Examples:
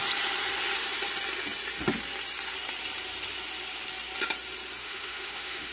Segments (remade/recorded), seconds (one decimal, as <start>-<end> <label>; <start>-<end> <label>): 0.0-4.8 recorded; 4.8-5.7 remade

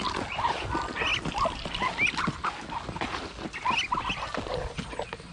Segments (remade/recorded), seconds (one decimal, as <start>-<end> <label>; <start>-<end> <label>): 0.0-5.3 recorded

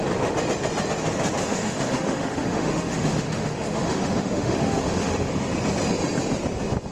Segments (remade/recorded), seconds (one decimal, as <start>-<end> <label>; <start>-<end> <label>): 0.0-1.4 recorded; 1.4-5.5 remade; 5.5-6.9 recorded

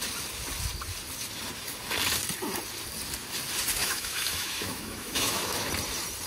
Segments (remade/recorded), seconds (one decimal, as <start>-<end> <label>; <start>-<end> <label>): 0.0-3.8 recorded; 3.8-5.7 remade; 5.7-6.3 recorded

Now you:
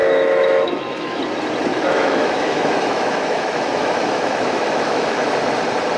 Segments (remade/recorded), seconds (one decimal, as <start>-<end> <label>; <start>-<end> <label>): 0.0-1.2 remade; 1.2-1.7 recorded; 1.7-5.3 remade; 5.3-6.0 recorded

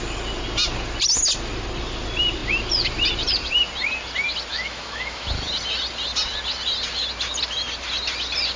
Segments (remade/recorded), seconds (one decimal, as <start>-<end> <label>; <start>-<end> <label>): 0.0-4.5 recorded; 4.5-5.3 remade; 5.3-8.6 recorded